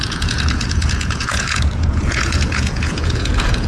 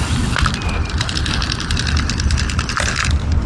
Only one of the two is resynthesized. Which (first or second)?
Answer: first